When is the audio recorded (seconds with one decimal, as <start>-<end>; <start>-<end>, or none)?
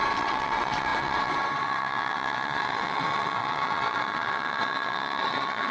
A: none